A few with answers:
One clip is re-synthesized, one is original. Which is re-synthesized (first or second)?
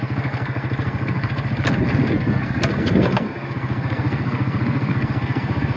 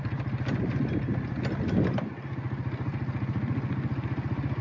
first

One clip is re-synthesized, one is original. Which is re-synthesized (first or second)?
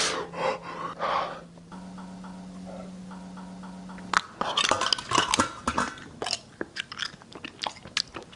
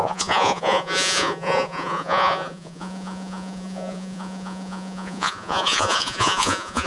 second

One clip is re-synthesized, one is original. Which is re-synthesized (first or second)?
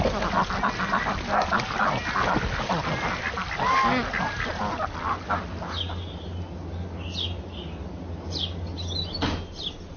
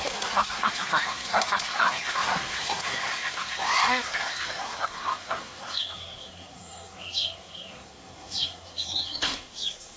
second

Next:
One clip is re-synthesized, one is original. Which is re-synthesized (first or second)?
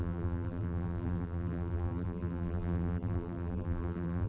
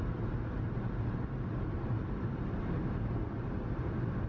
first